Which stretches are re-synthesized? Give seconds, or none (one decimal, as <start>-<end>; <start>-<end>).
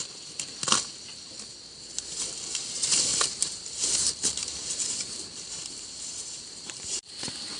3.1-7.1